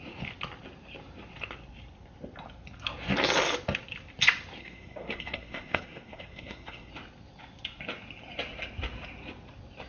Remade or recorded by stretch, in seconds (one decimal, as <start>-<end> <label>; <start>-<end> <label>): 0.0-4.6 recorded; 4.6-6.9 remade; 6.9-9.9 recorded

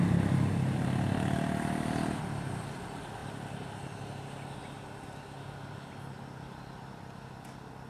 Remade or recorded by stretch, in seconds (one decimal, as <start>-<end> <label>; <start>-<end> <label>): 0.0-7.9 recorded

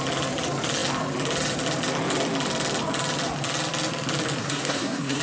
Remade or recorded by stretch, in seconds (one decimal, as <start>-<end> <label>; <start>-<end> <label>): 0.0-4.4 recorded; 4.4-5.2 remade